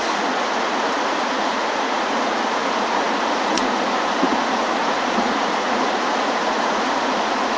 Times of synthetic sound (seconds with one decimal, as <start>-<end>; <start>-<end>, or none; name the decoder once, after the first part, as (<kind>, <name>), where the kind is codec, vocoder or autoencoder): 0.0-7.6 (vocoder, Vocos)